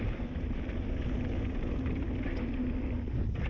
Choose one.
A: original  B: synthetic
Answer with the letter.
A